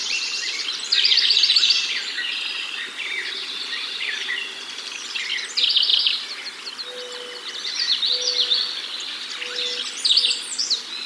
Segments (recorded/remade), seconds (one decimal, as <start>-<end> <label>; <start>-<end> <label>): 0.0-5.2 remade; 5.2-5.9 recorded; 5.9-6.7 remade; 6.7-11.1 recorded